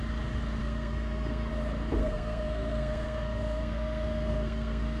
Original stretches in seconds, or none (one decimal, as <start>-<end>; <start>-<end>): 0.0-0.6; 1.5-2.0